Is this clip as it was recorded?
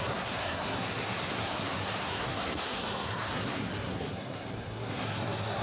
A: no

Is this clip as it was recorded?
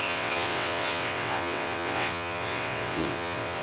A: no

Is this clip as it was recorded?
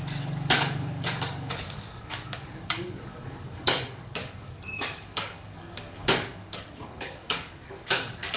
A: no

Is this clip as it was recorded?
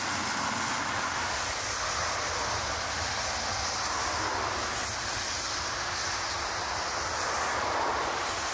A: yes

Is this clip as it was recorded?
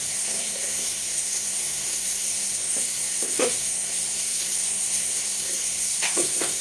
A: no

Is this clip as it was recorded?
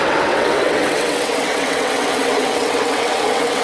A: no